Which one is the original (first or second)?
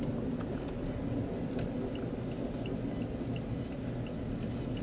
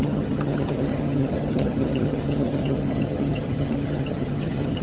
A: first